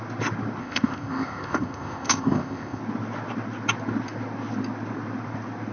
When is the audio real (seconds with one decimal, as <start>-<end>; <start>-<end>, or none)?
0.0-0.6; 2.8-5.7